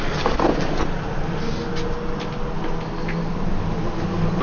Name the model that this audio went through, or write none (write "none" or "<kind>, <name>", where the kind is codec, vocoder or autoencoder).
none